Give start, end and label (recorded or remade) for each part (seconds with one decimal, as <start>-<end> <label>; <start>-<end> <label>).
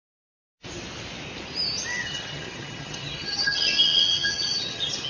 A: 0.0-1.9 recorded; 1.9-5.1 remade